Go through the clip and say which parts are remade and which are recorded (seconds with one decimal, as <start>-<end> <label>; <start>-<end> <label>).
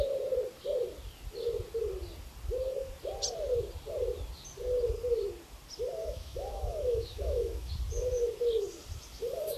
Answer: 0.0-6.0 recorded; 6.0-7.7 remade; 7.7-9.6 recorded